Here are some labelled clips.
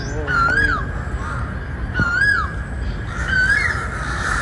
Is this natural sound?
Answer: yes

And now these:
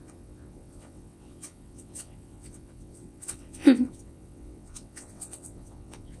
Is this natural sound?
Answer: no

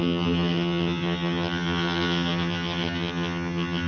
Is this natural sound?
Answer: no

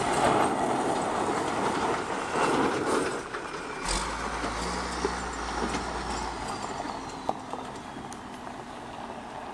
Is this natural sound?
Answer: yes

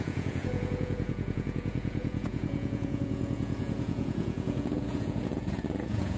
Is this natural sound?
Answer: no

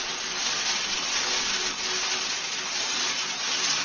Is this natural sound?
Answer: yes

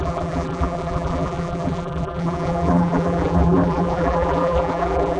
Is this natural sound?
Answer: no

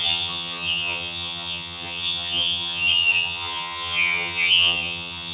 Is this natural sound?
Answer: no